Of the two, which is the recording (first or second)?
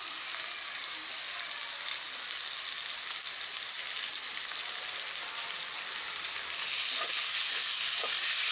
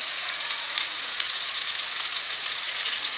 first